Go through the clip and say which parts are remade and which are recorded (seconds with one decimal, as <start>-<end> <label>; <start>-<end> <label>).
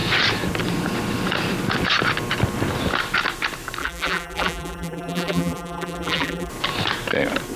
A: 0.0-3.8 recorded; 3.8-6.5 remade; 6.5-7.6 recorded